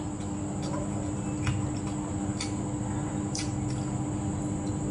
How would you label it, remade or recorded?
recorded